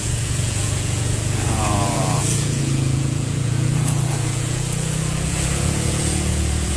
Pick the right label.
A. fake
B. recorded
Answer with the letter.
A